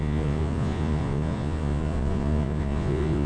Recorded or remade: remade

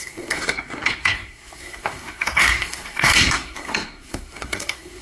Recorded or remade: remade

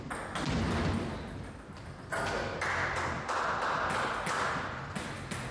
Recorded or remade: recorded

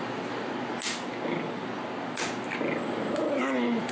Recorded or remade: recorded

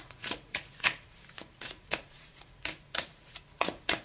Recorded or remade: remade